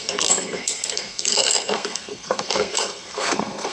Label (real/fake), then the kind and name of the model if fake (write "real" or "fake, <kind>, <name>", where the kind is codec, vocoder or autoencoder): fake, codec, SNAC